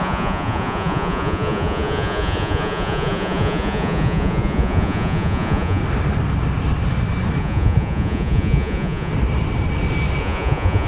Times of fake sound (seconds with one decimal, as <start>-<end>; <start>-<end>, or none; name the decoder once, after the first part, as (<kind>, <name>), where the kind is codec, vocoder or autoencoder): 0.0-5.8 (vocoder, Vocos); 7.4-9.1; 10.2-10.9